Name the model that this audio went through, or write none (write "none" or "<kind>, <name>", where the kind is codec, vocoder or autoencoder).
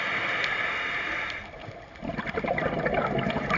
none